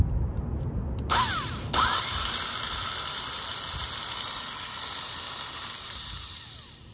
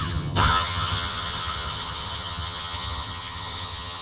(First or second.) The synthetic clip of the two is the second